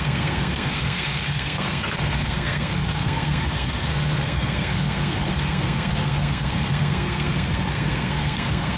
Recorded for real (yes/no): no